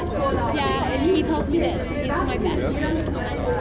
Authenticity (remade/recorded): recorded